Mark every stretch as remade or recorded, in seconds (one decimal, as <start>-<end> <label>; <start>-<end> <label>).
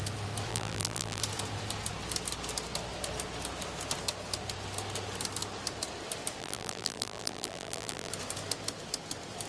0.0-0.5 recorded; 0.5-1.2 remade; 1.2-6.4 recorded; 6.4-8.1 remade; 8.1-9.5 recorded